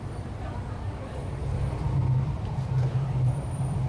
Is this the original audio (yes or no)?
no